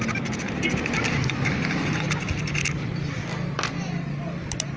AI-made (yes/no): no